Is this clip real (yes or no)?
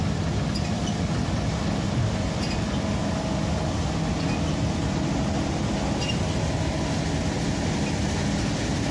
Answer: yes